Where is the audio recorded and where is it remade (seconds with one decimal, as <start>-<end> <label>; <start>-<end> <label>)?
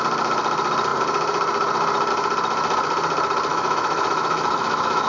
0.0-3.5 recorded; 3.5-5.1 remade